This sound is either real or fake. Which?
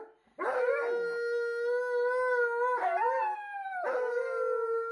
real